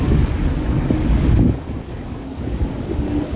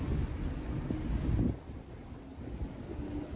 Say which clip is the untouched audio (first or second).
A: second